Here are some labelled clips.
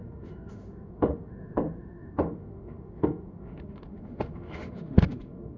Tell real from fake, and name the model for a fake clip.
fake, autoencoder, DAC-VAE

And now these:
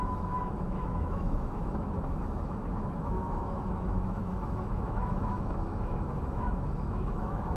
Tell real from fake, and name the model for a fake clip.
fake, autoencoder, DAC-VAE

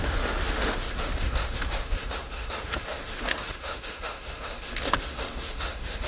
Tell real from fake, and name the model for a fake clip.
fake, autoencoder, DAC-VAE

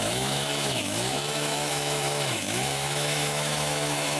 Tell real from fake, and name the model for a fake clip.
fake, autoencoder, DAC-VAE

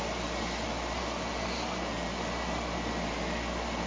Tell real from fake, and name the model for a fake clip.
real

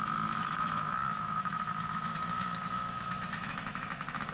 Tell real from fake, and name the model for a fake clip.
fake, autoencoder, DAC-VAE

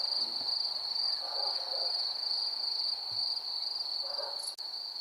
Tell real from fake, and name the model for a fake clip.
real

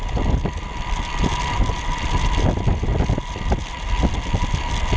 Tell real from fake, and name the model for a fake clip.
real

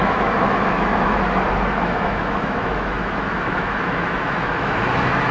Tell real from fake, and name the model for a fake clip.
fake, autoencoder, DAC-VAE